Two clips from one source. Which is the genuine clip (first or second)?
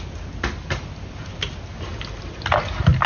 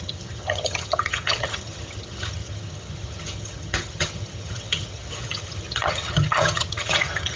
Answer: first